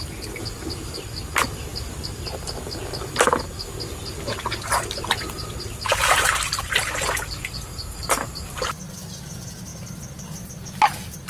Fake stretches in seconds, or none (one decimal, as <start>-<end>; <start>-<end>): 5.9-6.6; 7.7-8.8